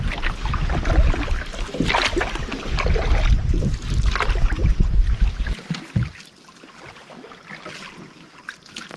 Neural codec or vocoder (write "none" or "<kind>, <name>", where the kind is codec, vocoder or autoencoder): none